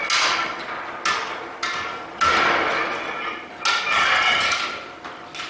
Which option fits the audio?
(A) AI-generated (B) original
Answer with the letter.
B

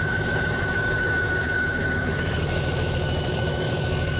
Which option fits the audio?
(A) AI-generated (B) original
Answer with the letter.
A